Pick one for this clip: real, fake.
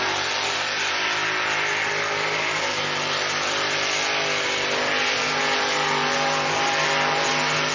real